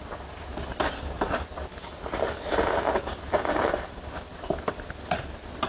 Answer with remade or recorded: recorded